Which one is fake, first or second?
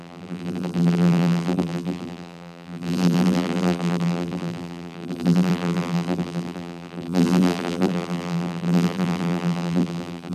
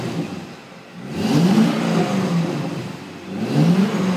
first